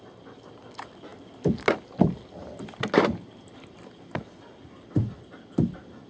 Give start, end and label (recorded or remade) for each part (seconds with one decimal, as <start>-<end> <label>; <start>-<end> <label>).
0.0-6.1 recorded